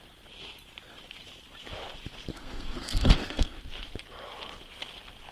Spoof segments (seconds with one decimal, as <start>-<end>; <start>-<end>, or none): 2.3-3.6